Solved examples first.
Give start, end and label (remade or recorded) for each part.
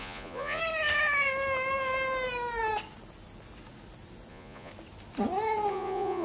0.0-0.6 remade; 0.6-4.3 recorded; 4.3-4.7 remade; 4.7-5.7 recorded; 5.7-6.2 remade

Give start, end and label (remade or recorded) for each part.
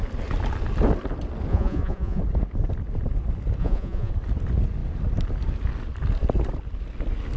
0.0-1.5 recorded; 1.5-2.2 remade; 2.2-3.6 recorded; 3.6-4.1 remade; 4.1-7.4 recorded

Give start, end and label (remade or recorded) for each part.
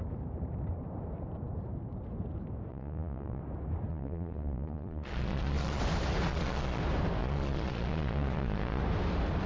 0.0-2.7 recorded; 2.7-3.4 remade; 3.4-3.9 recorded; 3.9-5.8 remade; 5.8-6.3 recorded; 6.3-6.8 remade; 6.8-7.2 recorded; 7.2-8.8 remade; 8.8-9.5 recorded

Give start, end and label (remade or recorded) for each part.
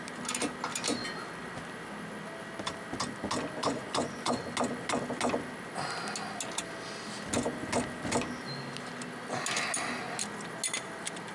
0.0-3.6 recorded; 3.6-4.4 remade; 4.4-11.3 recorded